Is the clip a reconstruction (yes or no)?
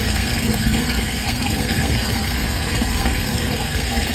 yes